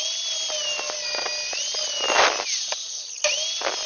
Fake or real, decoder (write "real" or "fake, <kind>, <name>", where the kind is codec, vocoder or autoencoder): real